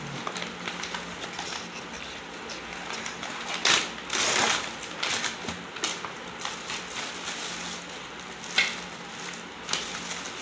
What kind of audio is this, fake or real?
real